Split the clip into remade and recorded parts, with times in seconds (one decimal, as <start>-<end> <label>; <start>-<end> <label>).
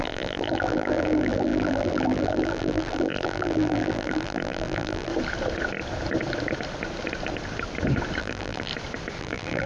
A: 0.0-5.1 remade; 5.1-8.2 recorded; 8.2-8.7 remade; 8.7-9.2 recorded; 9.2-9.7 remade